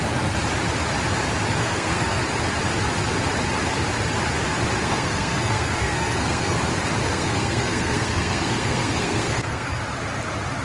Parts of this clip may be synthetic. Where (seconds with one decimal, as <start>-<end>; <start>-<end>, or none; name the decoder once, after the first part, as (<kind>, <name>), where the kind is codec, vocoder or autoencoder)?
1.6-2.2 (codec, SNAC); 4.8-6.6; 7.1-9.8